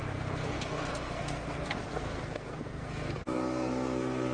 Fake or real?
fake